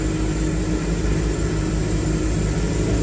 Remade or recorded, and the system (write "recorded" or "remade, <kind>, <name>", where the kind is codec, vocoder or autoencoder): recorded